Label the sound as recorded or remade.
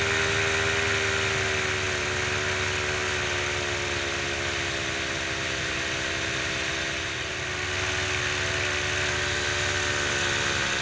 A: recorded